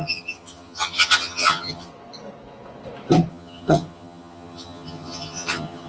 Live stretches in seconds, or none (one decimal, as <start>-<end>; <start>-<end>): 1.9-3.3